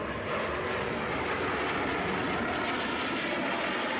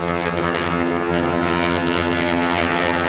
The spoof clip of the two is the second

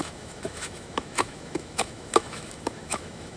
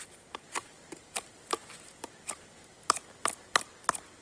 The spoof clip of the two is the first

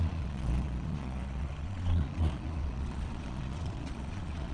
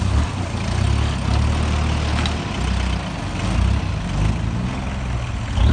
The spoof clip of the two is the first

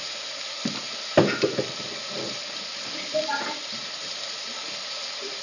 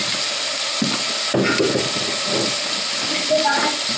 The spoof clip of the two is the first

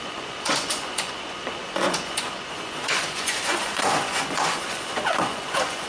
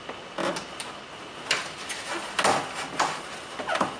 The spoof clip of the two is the first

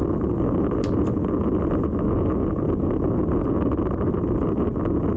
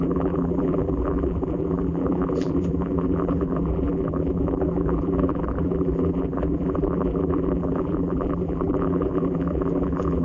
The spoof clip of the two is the second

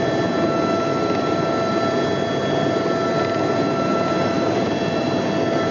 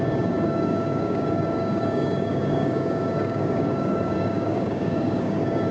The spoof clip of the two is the second